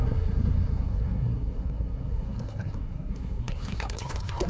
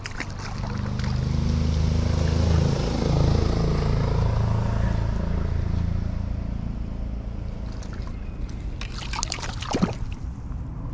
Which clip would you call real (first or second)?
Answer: second